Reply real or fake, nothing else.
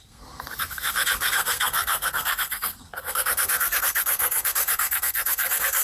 fake